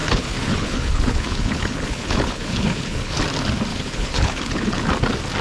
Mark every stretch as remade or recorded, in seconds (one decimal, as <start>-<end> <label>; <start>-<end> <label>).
0.0-3.2 remade; 3.2-3.7 recorded; 3.7-4.8 remade; 4.8-5.4 recorded